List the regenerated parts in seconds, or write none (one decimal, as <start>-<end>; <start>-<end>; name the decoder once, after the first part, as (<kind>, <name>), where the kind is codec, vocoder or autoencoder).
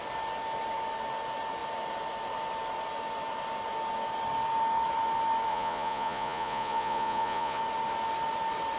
5.5-7.6 (vocoder, Vocos)